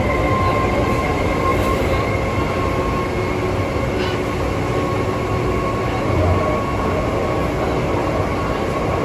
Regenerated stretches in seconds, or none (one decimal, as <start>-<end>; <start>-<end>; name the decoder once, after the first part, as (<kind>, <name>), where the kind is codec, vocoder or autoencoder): 1.5-2.7 (vocoder, BigVGAN v2)